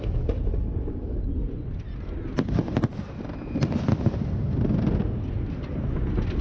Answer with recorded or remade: recorded